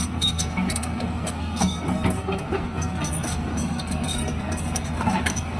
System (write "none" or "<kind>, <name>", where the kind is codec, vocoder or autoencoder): codec, SNAC